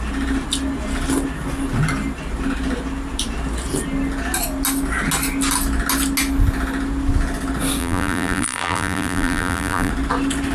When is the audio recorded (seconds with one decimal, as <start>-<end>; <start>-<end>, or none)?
0.0-7.8; 9.9-10.5